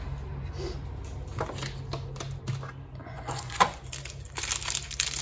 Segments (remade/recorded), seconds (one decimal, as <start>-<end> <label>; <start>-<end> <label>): 0.0-3.0 recorded; 3.0-3.9 remade; 3.9-5.2 recorded